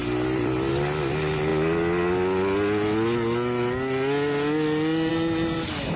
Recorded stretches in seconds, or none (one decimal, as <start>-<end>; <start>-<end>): 0.7-6.0

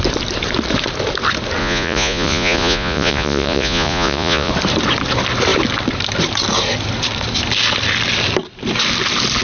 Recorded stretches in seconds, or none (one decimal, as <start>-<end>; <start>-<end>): 0.0-1.6; 4.5-9.4

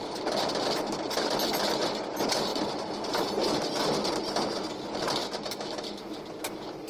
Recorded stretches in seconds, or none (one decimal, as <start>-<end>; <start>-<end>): 0.0-5.2; 6.2-6.9

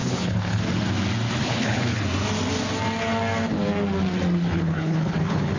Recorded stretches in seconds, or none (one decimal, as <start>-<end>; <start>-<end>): 0.6-1.4; 2.0-4.5